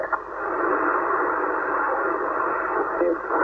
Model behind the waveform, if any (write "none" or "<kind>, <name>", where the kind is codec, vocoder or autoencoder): none